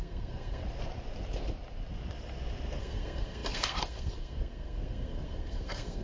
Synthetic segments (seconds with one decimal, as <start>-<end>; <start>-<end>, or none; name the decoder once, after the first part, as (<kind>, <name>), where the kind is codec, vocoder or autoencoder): 0.0-0.6 (codec, SNAC); 2.8-6.0

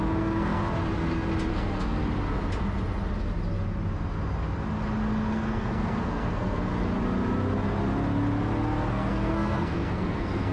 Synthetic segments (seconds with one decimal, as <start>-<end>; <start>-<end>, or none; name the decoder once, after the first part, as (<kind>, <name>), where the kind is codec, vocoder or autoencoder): 0.0-0.6 (codec, SNAC); 1.5-2.0; 5.3-6.7; 8.9-10.5

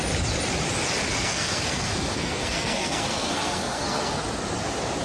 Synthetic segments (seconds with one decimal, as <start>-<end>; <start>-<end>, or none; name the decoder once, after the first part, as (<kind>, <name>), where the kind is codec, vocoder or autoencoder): 1.1-4.1 (codec, SNAC)